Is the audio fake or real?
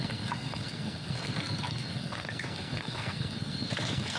fake